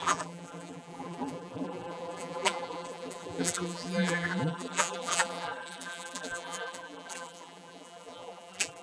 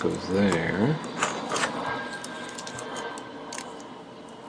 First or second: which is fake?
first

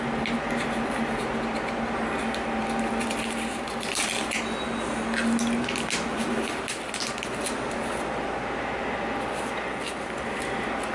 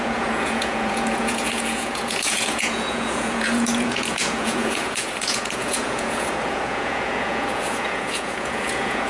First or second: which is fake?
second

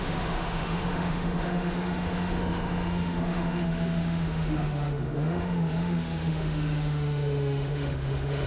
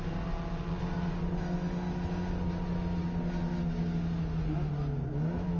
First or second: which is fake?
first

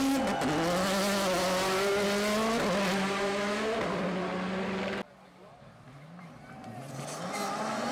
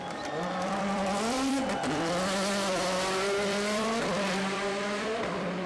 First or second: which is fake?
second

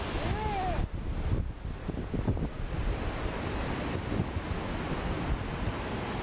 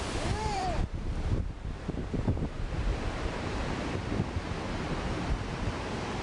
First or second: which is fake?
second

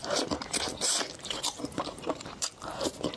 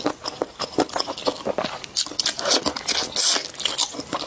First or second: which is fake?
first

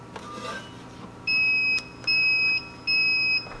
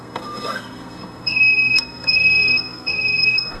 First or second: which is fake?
second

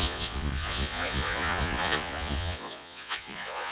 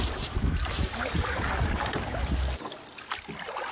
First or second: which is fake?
first